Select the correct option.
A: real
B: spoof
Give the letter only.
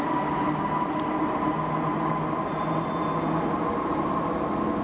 A